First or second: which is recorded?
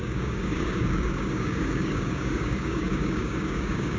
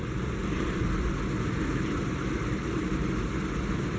second